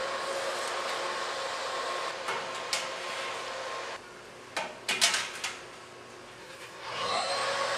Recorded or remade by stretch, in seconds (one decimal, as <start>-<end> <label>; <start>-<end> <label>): 0.0-6.4 recorded; 6.4-7.3 remade; 7.3-7.8 recorded